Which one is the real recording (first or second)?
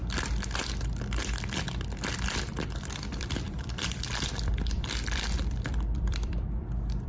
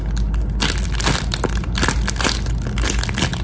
second